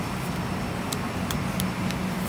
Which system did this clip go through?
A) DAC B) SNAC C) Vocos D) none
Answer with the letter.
D